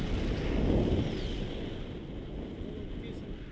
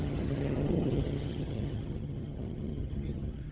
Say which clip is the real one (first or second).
first